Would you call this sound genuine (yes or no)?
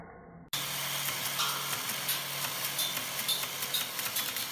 yes